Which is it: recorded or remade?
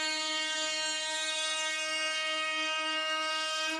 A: remade